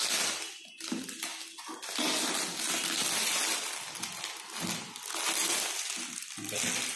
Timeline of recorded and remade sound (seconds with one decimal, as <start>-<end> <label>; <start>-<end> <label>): 0.0-7.0 recorded